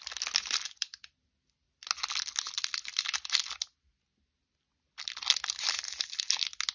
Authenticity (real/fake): real